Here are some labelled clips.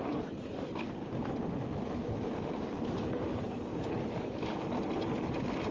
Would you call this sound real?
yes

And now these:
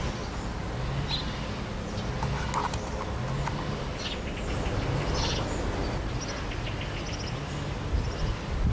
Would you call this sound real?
yes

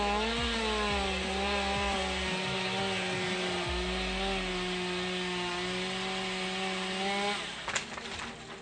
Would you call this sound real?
yes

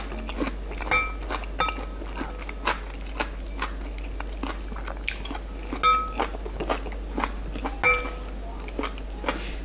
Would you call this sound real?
yes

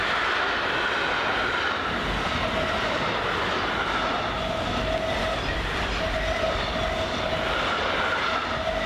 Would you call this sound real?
yes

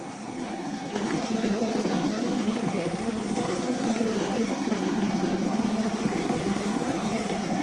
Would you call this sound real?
no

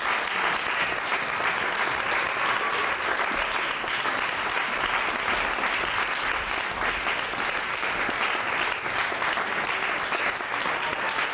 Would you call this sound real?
yes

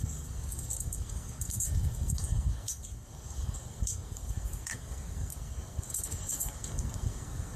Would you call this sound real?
no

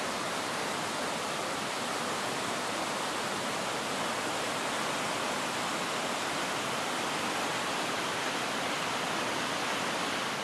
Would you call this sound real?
yes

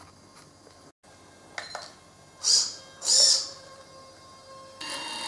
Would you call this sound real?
yes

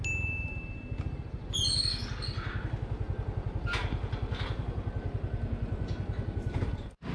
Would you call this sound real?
yes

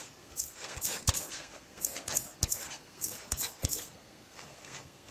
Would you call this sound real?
no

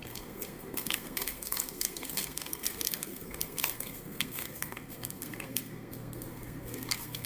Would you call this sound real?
no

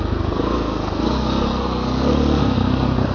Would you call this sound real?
no